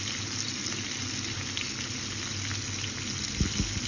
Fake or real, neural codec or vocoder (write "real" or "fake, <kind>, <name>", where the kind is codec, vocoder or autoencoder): real